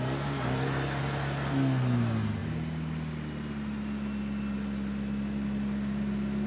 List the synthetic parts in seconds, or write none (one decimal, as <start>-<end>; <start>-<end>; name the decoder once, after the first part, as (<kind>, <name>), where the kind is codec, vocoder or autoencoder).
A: none